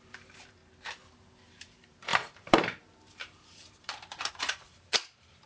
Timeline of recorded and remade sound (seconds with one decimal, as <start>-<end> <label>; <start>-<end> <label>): 0.0-0.6 remade; 0.6-1.6 recorded; 1.6-5.5 remade